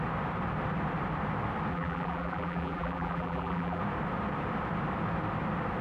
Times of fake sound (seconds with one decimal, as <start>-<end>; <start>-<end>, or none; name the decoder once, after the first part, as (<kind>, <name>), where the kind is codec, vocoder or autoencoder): 1.7-3.8 (vocoder, BigVGAN v2)